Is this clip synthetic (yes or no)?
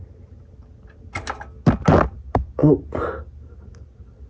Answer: no